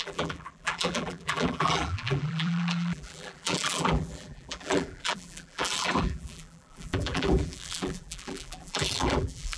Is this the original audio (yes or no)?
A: no